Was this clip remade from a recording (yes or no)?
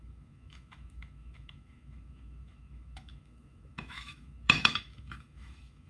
yes